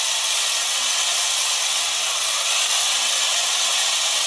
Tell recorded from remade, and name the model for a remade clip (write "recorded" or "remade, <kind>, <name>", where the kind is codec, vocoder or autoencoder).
remade, vocoder, WaveNeXt